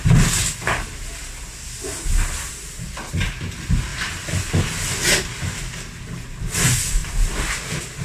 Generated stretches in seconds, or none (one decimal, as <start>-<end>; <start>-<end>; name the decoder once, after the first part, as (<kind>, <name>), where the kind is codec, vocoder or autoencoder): none